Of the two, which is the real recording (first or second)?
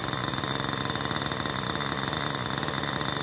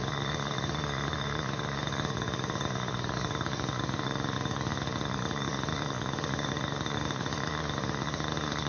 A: first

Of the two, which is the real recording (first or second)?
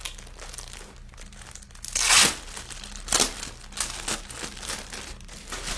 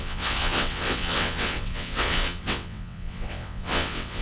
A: first